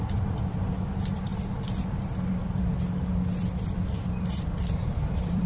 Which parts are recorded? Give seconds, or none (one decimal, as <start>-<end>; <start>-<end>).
1.3-4.6